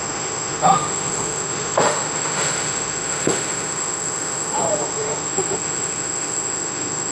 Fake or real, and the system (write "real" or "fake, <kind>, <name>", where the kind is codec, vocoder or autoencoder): fake, autoencoder, DAC-VAE